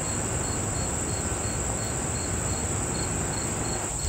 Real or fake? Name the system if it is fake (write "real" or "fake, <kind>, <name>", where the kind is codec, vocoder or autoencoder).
real